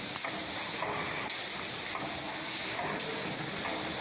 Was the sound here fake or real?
real